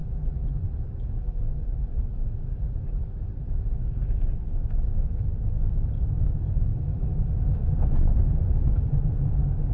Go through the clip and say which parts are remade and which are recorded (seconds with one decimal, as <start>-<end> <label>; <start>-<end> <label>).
0.0-3.2 remade; 3.2-6.7 recorded; 6.7-7.2 remade; 7.2-9.7 recorded